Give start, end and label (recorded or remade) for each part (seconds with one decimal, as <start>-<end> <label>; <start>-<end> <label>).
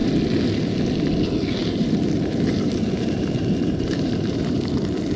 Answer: 0.0-1.6 recorded; 1.6-4.7 remade; 4.7-5.2 recorded